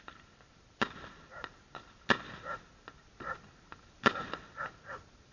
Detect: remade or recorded recorded